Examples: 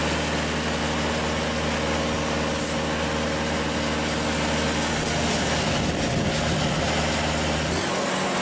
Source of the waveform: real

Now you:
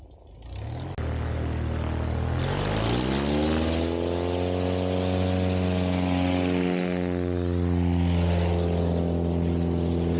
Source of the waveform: real